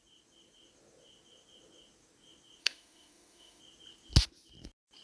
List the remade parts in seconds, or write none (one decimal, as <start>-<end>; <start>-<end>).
2.6-3.6